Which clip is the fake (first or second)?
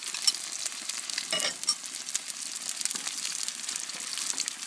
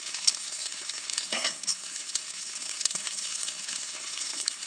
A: second